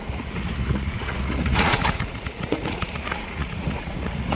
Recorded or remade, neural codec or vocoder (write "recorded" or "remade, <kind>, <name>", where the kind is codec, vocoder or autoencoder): remade, vocoder, Vocos